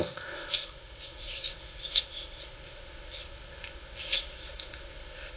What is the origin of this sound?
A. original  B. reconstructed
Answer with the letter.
B